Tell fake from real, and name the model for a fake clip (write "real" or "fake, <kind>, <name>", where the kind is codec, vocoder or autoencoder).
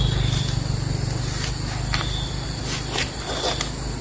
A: real